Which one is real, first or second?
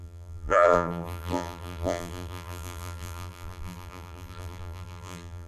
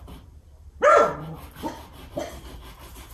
second